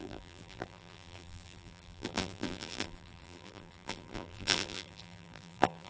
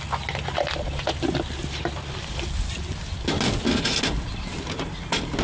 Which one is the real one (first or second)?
second